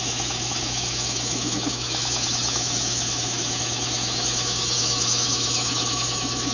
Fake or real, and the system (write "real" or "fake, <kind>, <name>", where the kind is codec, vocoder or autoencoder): fake, autoencoder, DAC-VAE